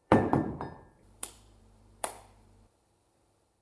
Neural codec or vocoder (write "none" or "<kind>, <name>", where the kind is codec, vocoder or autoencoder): vocoder, BigVGAN v2